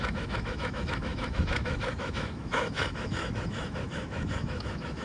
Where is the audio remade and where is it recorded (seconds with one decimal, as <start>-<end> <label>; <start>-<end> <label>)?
0.0-5.0 remade